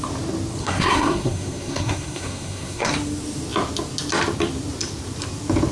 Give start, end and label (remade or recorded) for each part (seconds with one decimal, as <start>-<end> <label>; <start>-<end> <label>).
0.0-0.6 recorded; 0.6-2.9 remade; 2.9-5.7 recorded